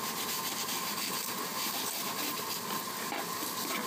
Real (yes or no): yes